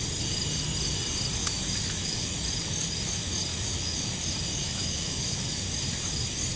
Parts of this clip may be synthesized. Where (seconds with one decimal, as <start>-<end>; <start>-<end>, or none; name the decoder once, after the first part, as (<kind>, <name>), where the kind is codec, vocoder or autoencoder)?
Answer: 1.4-2.3 (autoencoder, DAC-VAE); 3.5-4.1; 4.6-5.6